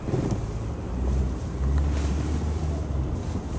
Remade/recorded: recorded